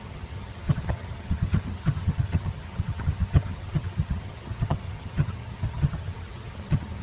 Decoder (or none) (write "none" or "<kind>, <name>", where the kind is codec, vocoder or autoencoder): vocoder, HiFi-GAN